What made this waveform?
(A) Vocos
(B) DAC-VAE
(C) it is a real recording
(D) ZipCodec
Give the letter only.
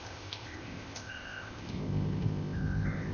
D